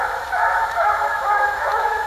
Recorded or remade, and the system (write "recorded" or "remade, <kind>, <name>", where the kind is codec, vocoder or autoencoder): remade, autoencoder, DAC-VAE